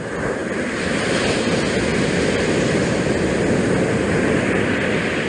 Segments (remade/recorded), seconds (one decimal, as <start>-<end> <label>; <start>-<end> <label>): 0.0-5.3 recorded